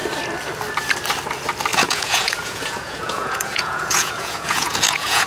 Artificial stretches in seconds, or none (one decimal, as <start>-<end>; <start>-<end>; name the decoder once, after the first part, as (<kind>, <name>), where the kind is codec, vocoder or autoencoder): 1.7-5.3 (vocoder, Vocos)